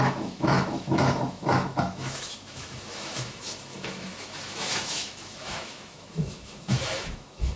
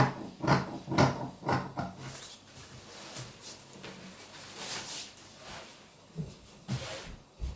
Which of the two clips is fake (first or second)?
first